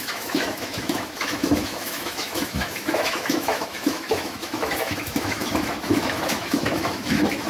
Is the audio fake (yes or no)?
yes